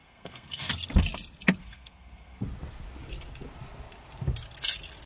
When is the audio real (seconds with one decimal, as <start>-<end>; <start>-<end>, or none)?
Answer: 0.7-1.6; 2.4-5.1